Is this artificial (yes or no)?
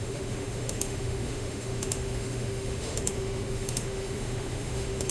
yes